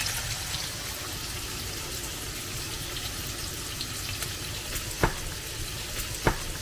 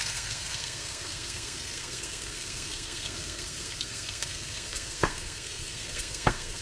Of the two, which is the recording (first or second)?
first